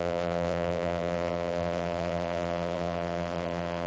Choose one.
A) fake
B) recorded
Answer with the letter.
A